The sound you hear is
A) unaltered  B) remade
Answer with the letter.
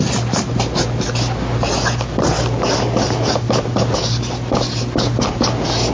A